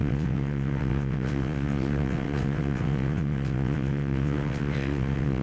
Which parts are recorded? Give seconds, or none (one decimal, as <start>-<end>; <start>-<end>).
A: none